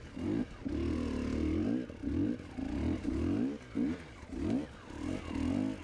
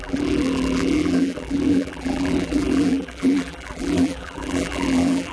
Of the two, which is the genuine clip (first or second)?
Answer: first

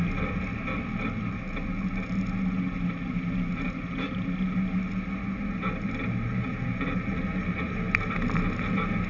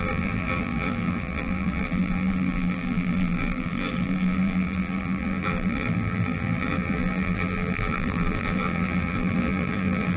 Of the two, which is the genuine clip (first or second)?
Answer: first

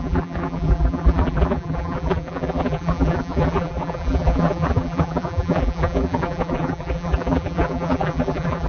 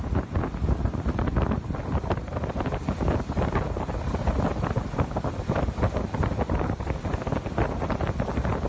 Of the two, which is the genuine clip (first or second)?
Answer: second